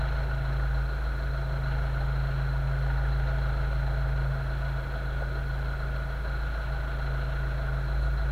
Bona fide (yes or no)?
yes